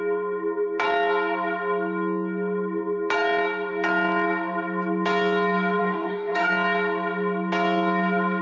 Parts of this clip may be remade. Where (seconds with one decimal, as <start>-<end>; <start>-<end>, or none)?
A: 5.8-6.5